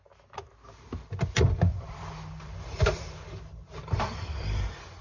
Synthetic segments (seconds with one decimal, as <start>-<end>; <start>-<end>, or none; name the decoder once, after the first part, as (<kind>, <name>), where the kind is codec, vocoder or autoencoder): 1.7-5.0 (vocoder, BigVGAN v2)